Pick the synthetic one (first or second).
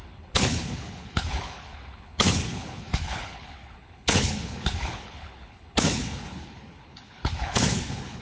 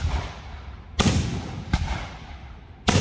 first